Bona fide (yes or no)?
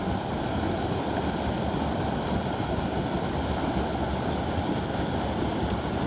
yes